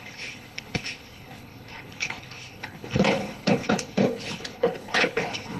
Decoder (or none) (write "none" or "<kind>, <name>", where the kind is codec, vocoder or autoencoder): codec, HILCodec